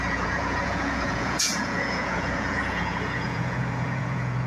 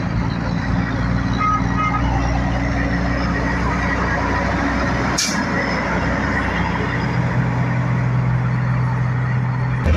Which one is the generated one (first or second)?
first